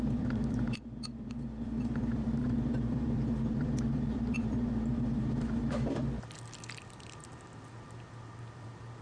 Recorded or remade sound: remade